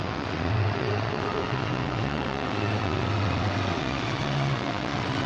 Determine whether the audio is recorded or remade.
remade